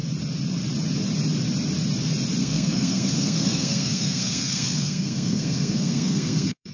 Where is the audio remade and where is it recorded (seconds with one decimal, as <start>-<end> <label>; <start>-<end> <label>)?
0.0-2.4 recorded; 2.4-6.7 remade